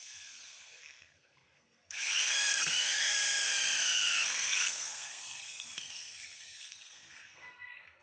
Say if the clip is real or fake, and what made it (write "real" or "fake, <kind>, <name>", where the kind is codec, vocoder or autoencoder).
fake, codec, SNAC